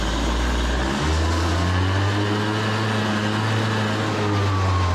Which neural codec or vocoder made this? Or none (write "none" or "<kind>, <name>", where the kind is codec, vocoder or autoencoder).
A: none